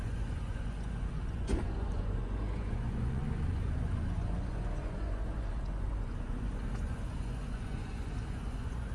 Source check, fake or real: fake